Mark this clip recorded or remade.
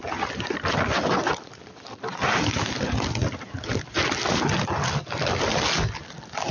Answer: recorded